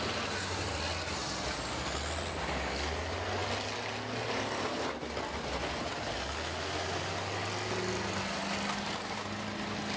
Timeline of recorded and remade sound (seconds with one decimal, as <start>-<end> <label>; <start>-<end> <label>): 0.0-10.0 recorded